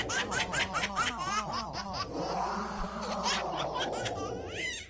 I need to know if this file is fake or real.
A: real